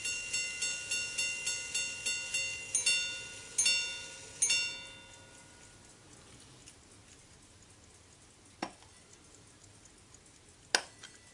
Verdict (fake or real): real